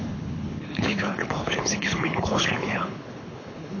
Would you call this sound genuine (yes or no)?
no